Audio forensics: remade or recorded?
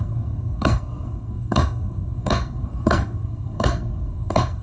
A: remade